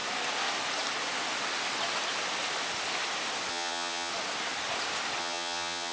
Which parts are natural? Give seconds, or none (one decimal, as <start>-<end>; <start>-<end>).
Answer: 0.0-3.5; 4.1-5.2